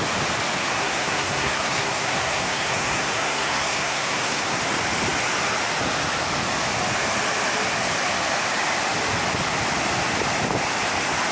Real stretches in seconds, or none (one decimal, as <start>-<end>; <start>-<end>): 0.0-0.6; 4.6-11.3